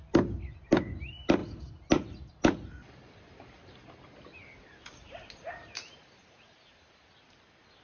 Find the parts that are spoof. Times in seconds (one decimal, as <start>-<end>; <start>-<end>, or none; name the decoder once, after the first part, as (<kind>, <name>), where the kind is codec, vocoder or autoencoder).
none